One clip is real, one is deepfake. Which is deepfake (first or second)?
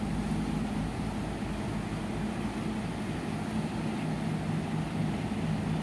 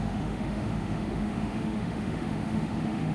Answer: second